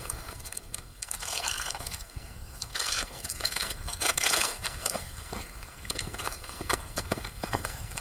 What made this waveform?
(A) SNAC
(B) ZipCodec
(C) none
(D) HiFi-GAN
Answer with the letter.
A